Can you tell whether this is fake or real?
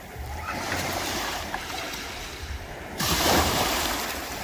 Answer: fake